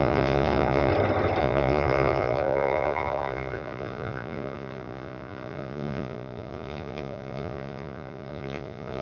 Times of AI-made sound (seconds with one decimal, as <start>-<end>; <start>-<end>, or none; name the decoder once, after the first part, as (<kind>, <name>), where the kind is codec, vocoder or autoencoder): 0.0-0.9 (vocoder, Vocos); 1.4-9.0